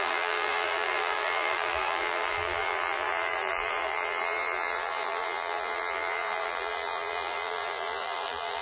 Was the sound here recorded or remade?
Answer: remade